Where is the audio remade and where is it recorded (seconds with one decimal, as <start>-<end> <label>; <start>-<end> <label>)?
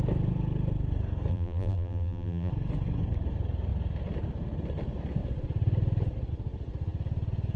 0.0-1.3 recorded; 1.3-2.5 remade; 2.5-7.6 recorded